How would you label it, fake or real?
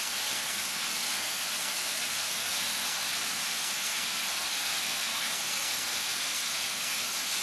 fake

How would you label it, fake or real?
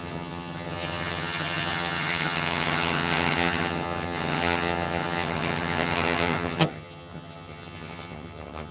fake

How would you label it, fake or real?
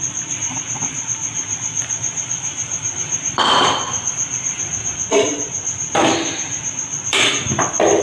fake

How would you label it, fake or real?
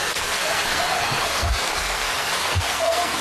fake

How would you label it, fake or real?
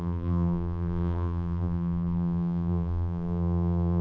fake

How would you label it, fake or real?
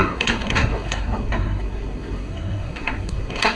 fake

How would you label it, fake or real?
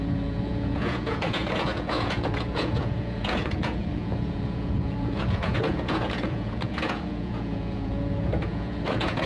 fake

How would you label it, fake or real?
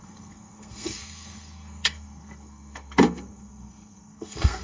fake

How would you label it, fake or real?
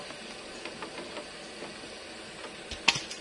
real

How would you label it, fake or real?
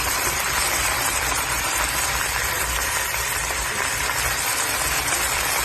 fake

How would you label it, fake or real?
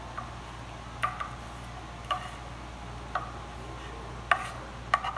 real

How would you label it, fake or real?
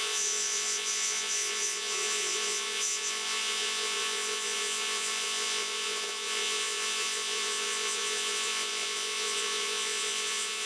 fake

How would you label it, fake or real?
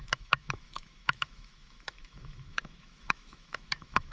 fake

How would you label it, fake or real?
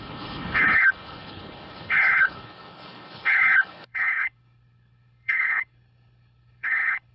fake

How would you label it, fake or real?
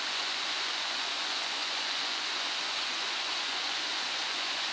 fake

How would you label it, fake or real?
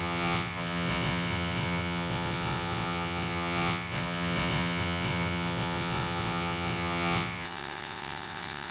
fake